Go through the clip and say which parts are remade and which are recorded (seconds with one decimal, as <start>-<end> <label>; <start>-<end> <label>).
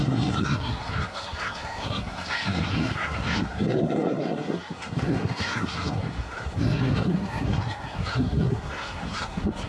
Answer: 0.0-9.7 remade